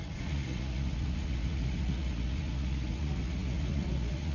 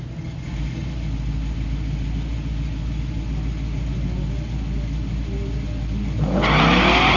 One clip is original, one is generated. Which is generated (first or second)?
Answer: first